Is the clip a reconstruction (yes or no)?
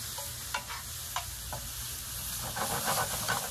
no